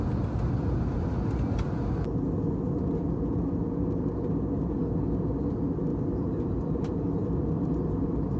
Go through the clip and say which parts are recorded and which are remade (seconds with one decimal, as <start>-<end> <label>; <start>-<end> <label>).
0.0-8.4 recorded